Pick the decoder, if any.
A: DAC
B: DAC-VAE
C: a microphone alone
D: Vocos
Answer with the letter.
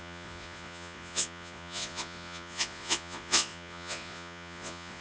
D